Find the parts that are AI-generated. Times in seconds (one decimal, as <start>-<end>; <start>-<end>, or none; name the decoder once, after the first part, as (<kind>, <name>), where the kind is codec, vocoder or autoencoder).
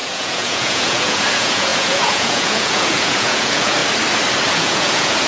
0.0-3.8 (vocoder, Vocos); 4.5-5.3